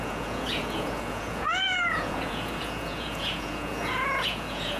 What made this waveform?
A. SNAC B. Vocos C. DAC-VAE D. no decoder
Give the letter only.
B